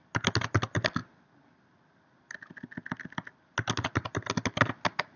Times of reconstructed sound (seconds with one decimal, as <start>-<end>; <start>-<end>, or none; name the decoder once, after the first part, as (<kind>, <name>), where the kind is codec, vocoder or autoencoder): none